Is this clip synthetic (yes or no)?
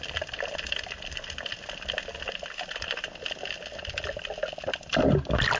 no